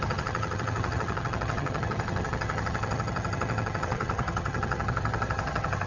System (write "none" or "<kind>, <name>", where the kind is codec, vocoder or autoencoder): vocoder, HiFi-GAN